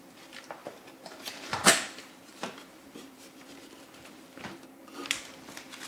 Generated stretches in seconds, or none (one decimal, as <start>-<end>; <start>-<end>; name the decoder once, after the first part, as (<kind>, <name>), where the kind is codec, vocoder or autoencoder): 0.0-4.8 (vocoder, BigVGAN v2)